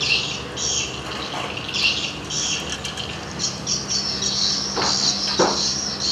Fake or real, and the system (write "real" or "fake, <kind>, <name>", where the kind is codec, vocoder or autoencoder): real